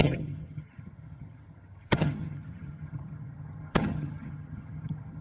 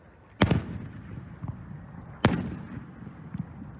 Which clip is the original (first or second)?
second